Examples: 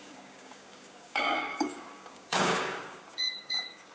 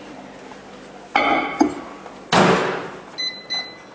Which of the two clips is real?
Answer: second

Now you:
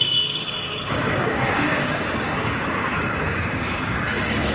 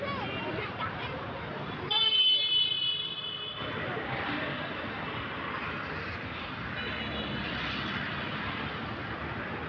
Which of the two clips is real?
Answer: second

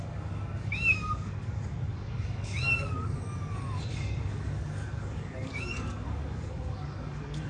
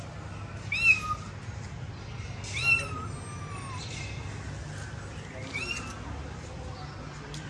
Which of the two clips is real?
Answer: second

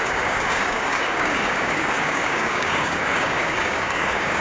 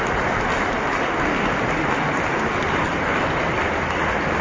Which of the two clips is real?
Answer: second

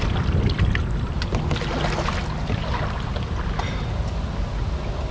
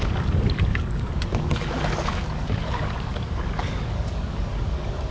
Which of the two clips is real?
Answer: first